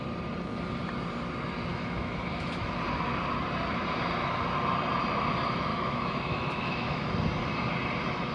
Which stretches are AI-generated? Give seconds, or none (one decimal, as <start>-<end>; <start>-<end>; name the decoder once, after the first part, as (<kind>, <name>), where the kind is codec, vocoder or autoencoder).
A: 1.7-2.7 (autoencoder, DAC-VAE); 5.7-7.1

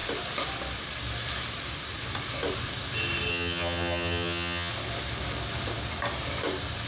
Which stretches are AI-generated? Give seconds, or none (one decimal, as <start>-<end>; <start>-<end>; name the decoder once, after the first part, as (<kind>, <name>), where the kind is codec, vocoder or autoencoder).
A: 3.3-4.7 (vocoder, HiFi-GAN)

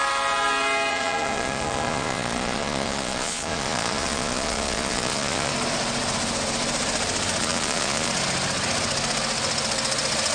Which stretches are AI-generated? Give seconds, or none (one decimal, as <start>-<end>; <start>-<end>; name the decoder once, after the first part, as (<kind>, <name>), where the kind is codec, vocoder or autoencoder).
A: 0.9-5.5 (vocoder, Vocos); 7.4-8.1